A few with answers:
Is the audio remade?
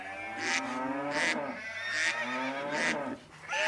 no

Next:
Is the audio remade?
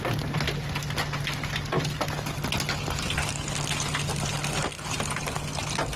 no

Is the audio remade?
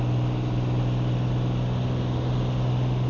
no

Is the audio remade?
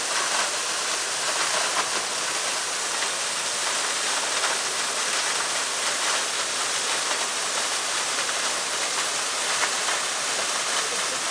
no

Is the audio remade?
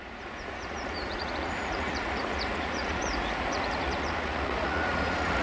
yes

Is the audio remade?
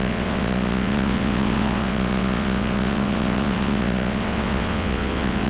yes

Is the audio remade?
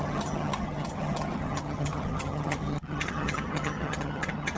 yes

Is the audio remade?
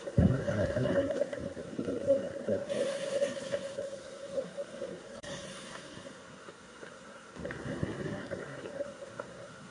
yes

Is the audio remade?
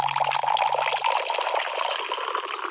no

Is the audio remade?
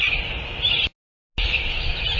no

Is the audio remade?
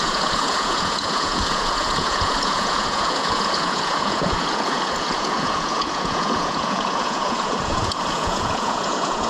yes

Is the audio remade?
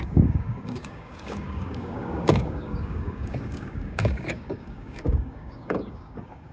yes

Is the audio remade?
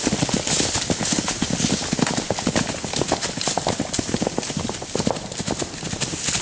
no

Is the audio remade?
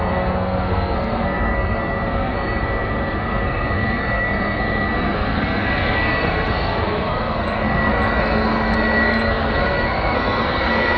yes